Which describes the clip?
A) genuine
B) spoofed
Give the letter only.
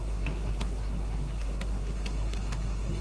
B